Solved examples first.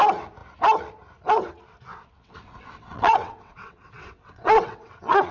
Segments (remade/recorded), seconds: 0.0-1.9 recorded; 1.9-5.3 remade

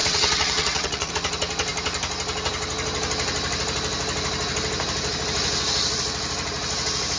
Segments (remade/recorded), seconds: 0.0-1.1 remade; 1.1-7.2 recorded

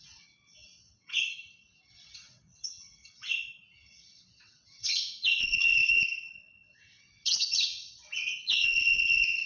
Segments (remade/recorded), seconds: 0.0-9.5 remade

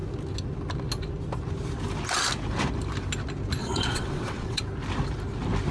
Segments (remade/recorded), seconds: 0.0-3.6 recorded; 3.6-4.6 remade; 4.6-5.7 recorded